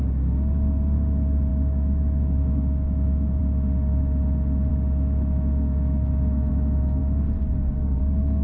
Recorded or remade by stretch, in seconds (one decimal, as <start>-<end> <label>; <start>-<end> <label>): 0.0-1.5 recorded; 1.5-3.4 remade; 3.4-4.7 recorded; 4.7-6.5 remade; 6.5-8.4 recorded

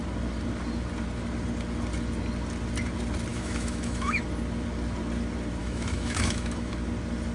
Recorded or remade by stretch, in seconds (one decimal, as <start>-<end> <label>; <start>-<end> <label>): 0.0-3.3 recorded; 3.3-4.2 remade; 4.2-5.6 recorded; 5.6-6.7 remade; 6.7-7.3 recorded

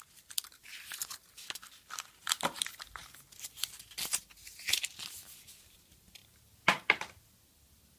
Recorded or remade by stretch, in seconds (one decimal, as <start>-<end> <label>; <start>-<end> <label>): 0.0-8.0 recorded

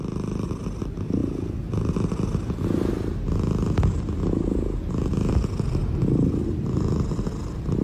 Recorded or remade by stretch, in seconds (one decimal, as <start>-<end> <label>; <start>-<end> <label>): 0.0-7.8 recorded